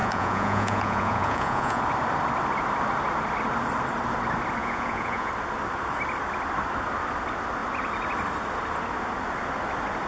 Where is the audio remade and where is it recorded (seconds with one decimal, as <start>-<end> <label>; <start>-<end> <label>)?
0.0-1.8 remade; 1.8-4.6 recorded; 4.6-5.3 remade; 5.3-10.1 recorded